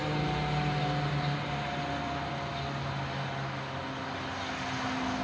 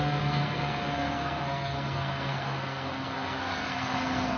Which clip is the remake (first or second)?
second